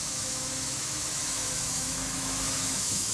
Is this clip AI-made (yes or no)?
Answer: yes